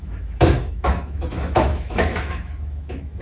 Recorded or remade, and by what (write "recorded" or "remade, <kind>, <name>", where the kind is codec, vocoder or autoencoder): remade, autoencoder, DAC-VAE